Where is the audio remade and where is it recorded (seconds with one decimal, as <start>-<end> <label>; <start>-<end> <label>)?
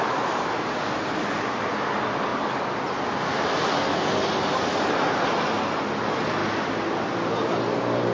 0.0-8.1 recorded